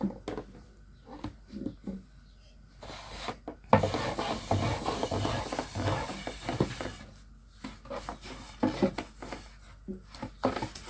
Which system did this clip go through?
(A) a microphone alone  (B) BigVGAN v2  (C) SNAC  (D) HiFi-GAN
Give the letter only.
A